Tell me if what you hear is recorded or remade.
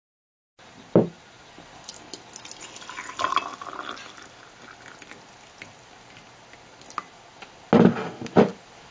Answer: recorded